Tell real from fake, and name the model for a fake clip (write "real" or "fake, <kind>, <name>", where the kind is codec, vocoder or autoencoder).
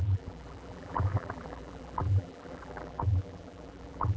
fake, vocoder, BigVGAN v2